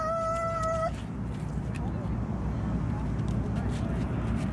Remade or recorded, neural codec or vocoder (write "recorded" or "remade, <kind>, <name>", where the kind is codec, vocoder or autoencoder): recorded